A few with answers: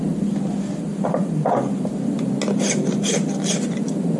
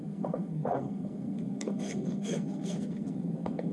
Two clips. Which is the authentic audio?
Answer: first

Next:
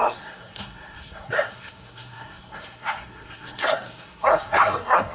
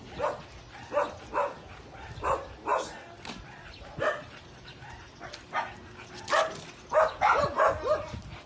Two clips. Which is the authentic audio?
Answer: second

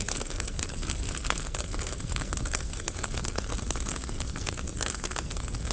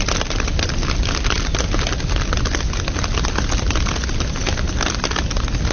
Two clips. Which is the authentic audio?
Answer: second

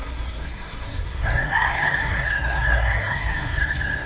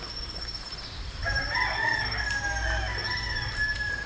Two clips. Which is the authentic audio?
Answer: second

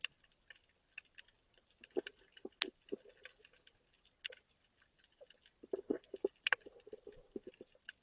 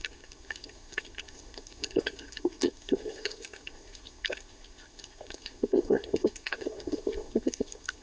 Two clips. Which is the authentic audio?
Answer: first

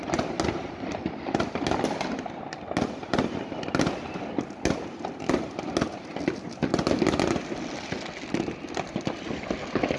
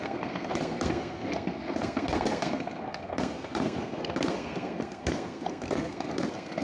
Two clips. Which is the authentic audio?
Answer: first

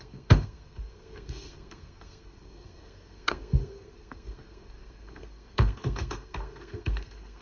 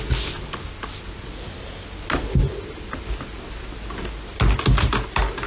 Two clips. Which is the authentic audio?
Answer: second